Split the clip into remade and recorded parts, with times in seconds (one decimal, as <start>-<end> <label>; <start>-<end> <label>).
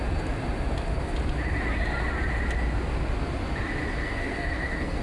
0.0-4.0 recorded; 4.0-5.0 remade